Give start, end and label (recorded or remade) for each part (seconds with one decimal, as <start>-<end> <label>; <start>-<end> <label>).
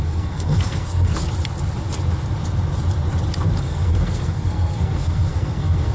0.0-1.1 remade; 1.1-3.6 recorded; 3.6-5.9 remade